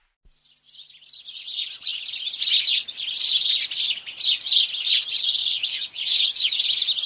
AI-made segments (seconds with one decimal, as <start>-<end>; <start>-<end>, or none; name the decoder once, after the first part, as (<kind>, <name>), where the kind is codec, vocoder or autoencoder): 5.4-6.6 (codec, DAC)